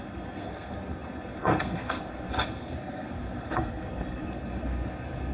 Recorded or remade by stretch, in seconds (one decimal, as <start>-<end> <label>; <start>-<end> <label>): 0.0-5.3 remade